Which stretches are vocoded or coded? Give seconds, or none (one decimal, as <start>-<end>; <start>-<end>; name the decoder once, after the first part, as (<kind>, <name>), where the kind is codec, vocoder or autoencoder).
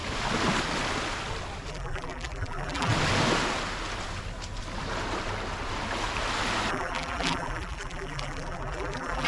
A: 1.7-2.9 (vocoder, BigVGAN v2); 6.7-9.3